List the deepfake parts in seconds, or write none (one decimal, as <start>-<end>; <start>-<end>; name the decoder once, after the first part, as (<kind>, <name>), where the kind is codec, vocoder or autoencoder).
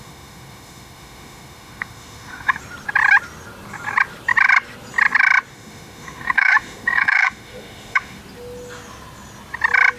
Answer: 0.0-2.6 (autoencoder, DAC-VAE); 5.5-8.2